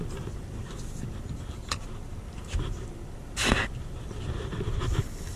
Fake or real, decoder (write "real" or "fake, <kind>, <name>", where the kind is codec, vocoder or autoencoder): real